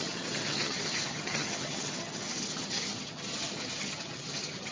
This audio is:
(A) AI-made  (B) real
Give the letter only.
A